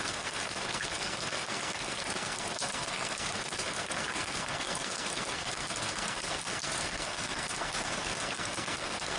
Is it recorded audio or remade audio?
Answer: remade